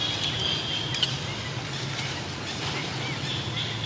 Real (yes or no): yes